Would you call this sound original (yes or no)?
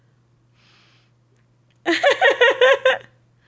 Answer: yes